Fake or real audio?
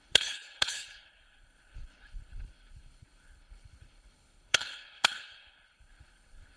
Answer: fake